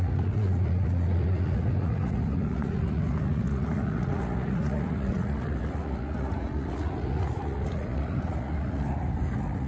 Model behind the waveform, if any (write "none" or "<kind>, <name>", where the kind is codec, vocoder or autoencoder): vocoder, Vocos